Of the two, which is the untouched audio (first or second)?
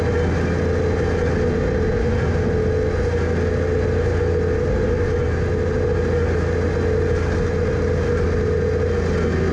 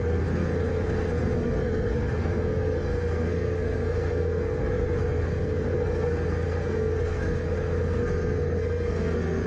first